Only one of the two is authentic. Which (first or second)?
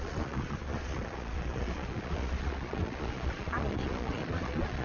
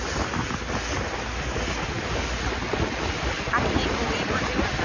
second